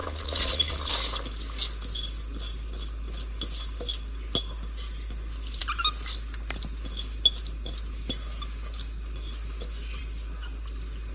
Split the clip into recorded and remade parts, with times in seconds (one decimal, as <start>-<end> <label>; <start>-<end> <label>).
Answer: 0.0-0.9 remade; 0.9-11.1 recorded